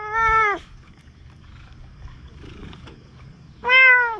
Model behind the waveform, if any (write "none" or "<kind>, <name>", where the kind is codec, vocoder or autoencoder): codec, DAC